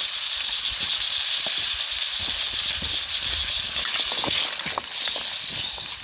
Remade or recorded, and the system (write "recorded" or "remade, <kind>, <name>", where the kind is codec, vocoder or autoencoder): recorded